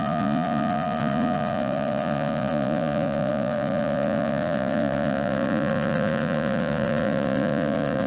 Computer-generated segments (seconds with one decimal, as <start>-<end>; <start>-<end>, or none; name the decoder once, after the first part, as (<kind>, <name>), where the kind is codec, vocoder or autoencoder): 0.0-8.1 (vocoder, Vocos)